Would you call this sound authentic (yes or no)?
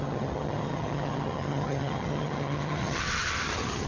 no